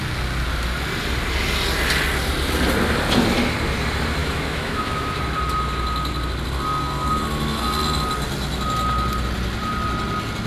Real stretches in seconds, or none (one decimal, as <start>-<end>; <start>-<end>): 0.0-4.2; 5.2-10.5